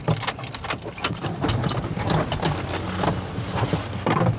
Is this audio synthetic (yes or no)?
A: no